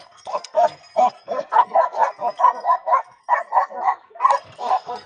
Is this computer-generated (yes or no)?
yes